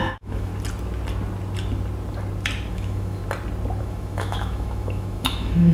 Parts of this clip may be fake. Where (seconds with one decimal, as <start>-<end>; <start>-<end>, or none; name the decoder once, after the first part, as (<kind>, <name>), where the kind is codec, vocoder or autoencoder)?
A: 0.0-0.5 (autoencoder, DAC-VAE); 2.7-3.2; 3.8-5.7